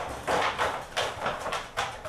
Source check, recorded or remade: remade